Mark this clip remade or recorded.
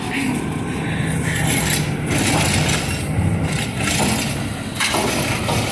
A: recorded